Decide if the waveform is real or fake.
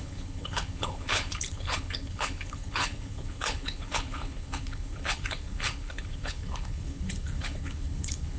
fake